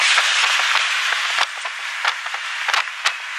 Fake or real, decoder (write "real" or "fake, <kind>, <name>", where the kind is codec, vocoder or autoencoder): real